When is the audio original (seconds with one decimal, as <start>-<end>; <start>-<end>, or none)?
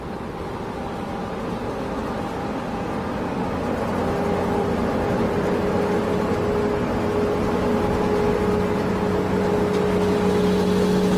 0.0-1.2; 5.4-11.2